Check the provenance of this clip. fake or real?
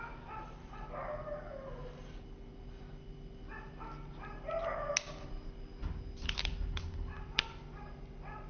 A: real